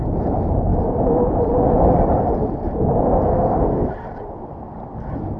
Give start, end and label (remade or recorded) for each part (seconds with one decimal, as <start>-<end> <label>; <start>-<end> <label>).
0.0-3.3 recorded; 3.3-3.9 remade; 3.9-5.4 recorded